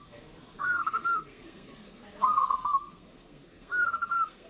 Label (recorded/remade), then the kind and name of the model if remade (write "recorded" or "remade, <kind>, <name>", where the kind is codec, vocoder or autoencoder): remade, codec, SNAC